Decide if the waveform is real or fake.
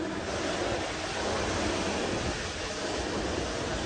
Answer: real